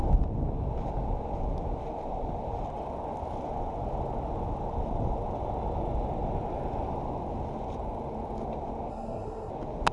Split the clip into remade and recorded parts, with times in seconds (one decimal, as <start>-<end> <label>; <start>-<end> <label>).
0.0-8.9 recorded; 8.9-9.5 remade; 9.5-9.9 recorded